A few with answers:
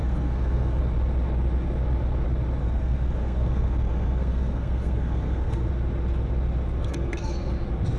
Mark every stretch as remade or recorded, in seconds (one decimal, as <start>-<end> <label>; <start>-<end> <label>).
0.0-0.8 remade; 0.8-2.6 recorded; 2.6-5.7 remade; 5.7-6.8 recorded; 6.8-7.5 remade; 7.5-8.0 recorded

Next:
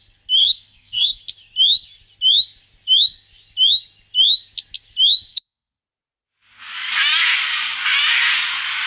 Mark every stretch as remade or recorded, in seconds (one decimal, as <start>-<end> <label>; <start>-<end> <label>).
0.0-0.4 recorded; 0.4-1.2 remade; 1.2-5.3 recorded; 5.3-5.8 remade; 5.8-8.9 recorded

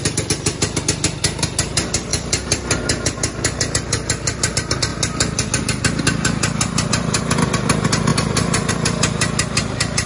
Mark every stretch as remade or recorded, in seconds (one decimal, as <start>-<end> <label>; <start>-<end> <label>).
0.0-2.1 recorded; 2.1-2.8 remade; 2.8-8.1 recorded; 8.1-8.7 remade; 8.7-10.1 recorded